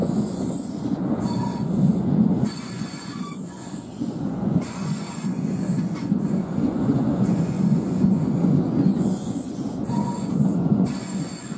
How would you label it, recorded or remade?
remade